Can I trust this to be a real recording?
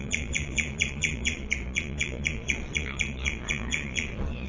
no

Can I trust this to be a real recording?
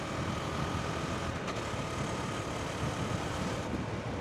yes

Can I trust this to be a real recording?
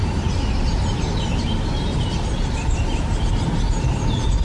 yes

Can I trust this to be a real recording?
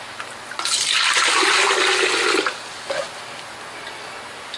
yes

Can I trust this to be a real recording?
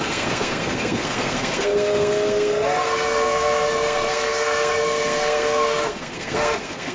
no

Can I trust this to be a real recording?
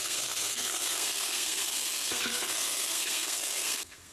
no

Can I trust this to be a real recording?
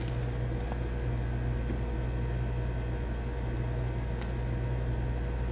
yes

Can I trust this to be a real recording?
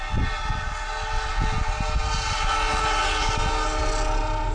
yes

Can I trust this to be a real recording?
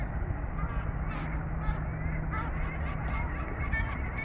yes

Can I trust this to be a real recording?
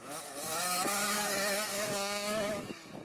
no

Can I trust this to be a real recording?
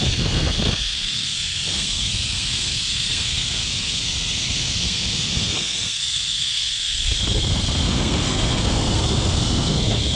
no